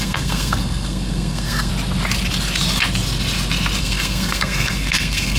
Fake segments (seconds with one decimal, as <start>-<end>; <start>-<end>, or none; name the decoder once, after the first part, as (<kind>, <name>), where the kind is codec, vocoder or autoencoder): 0.0-1.7 (codec, SNAC); 3.8-5.4